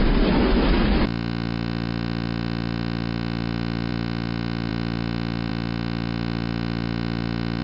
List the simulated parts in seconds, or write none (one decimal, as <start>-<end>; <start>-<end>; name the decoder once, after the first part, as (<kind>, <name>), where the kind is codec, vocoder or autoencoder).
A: none